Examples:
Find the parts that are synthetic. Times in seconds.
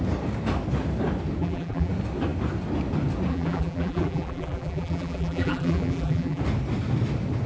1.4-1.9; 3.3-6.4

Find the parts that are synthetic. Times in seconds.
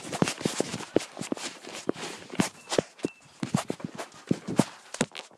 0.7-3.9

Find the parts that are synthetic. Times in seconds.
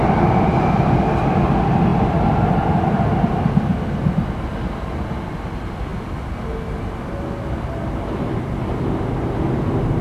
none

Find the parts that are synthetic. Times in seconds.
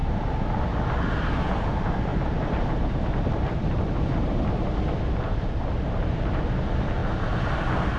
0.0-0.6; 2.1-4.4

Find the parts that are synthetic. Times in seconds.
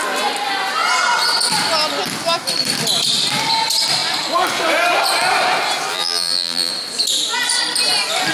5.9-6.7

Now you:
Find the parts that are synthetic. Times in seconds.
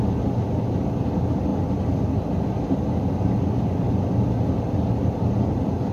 none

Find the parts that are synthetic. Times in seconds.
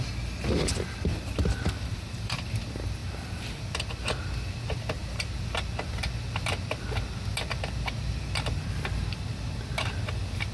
1.1-2.6; 3.0-3.6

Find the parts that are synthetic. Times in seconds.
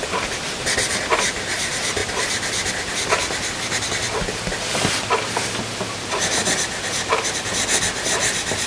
none